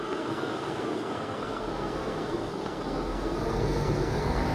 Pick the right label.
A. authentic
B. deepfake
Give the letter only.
B